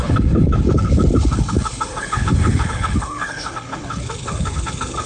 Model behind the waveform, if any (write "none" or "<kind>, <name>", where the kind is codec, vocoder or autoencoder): codec, HILCodec